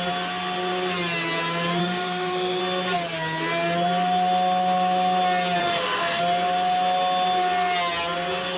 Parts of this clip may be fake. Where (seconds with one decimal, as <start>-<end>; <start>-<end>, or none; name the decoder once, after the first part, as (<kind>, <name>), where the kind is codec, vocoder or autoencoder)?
1.8-2.6 (autoencoder, DAC-VAE); 5.6-6.2